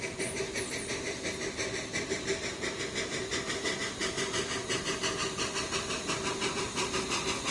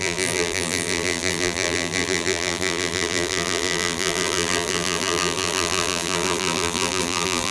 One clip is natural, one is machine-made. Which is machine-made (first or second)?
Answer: second